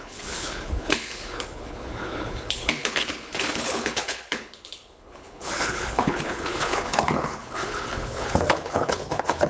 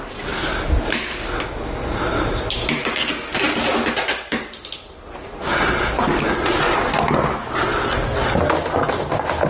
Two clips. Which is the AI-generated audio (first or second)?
first